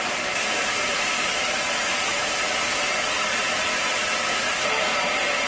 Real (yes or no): yes